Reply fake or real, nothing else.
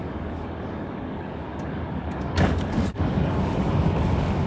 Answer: fake